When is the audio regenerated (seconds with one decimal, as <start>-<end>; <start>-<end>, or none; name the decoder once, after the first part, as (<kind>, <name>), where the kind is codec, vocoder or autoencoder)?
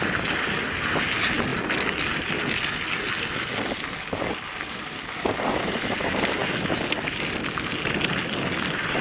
none